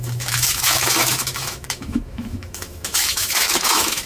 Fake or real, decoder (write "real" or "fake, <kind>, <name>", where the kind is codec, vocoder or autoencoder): fake, autoencoder, DAC-VAE